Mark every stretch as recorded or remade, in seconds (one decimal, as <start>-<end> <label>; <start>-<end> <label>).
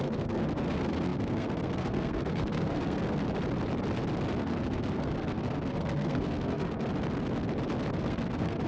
0.0-3.2 remade; 3.2-4.4 recorded; 4.4-6.9 remade; 6.9-8.0 recorded; 8.0-8.7 remade